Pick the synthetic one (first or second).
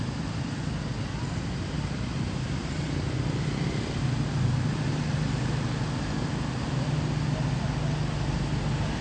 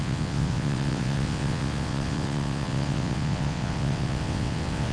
second